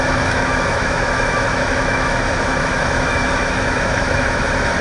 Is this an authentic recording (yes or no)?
no